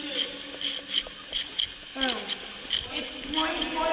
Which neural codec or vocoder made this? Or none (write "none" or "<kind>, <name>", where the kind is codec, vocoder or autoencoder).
none